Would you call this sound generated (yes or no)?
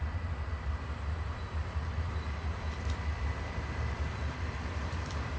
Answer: yes